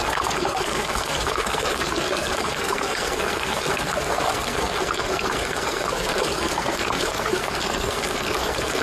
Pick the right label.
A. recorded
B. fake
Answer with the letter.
B